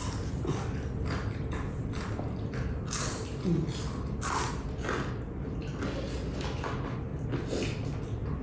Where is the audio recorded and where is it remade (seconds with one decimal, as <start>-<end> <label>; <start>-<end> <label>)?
0.0-8.4 recorded